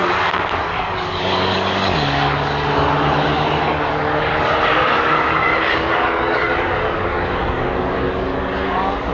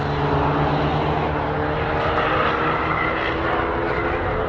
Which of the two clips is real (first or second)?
second